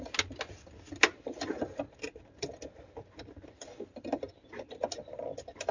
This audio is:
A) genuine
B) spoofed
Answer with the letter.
A